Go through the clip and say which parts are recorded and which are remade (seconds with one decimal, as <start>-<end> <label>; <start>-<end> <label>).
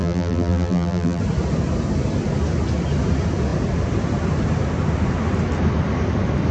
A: 0.0-1.2 remade; 1.2-6.5 recorded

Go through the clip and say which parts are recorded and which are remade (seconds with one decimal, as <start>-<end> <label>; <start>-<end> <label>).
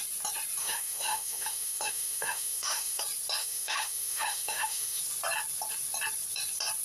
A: 0.0-0.6 recorded; 0.6-3.0 remade; 3.0-3.4 recorded; 3.4-5.0 remade; 5.0-6.8 recorded